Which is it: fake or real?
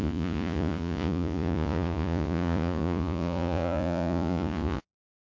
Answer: fake